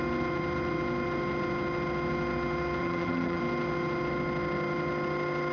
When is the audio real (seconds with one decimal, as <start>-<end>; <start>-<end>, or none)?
0.0-2.8; 3.4-5.5